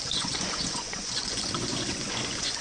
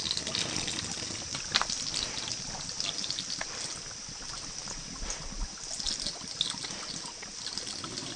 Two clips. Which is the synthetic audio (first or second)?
first